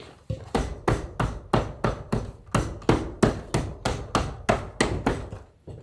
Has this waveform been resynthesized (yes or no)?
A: no